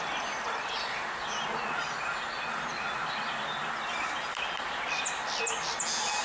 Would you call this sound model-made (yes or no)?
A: no